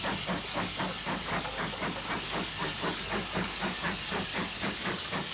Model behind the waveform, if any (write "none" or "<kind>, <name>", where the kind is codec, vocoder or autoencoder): codec, DAC